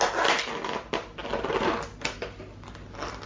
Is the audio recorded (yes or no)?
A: yes